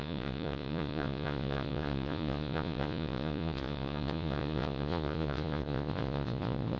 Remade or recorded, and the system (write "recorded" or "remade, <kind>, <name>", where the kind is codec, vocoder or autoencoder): remade, vocoder, Vocos